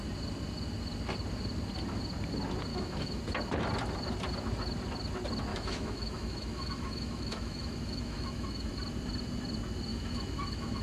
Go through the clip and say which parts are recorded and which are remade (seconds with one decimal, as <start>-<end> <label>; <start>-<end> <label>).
0.0-2.7 recorded; 2.7-3.2 remade; 3.2-5.5 recorded; 5.5-8.7 remade; 8.7-9.9 recorded; 9.9-10.8 remade